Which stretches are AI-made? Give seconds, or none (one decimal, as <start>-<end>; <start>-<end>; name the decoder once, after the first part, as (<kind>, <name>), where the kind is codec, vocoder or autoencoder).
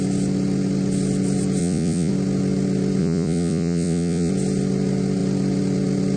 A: 1.6-2.1 (vocoder, Vocos); 3.0-4.3